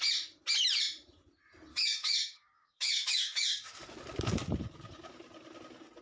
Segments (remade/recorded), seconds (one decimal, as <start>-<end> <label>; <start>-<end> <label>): 0.0-1.7 recorded; 1.7-3.7 remade; 3.7-6.0 recorded